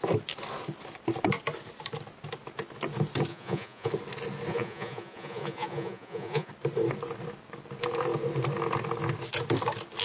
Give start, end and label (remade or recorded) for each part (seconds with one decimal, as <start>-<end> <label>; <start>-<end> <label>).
0.0-3.3 recorded; 3.3-3.9 remade; 3.9-4.5 recorded; 4.5-6.5 remade; 6.5-10.0 recorded